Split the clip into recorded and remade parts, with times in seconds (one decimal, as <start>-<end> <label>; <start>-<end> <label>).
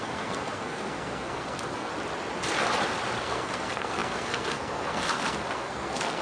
0.0-1.9 remade; 1.9-3.2 recorded; 3.2-6.2 remade